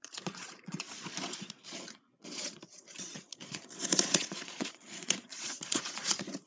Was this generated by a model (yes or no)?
yes